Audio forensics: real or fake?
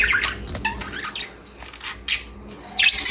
real